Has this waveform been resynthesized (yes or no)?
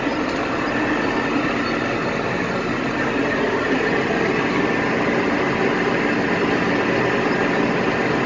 no